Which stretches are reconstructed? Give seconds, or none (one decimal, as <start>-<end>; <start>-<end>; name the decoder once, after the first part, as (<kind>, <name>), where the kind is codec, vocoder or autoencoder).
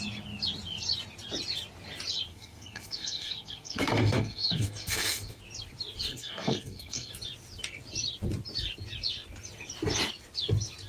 2.3-5.4 (codec, SNAC); 6.1-7.1